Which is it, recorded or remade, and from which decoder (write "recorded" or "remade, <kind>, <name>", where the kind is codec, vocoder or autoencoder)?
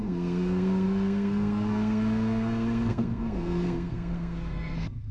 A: remade, codec, SNAC